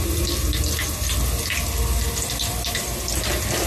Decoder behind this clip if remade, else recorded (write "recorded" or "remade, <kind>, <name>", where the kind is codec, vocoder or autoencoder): recorded